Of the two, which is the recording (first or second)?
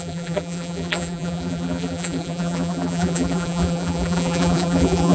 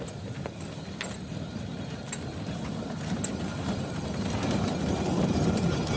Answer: second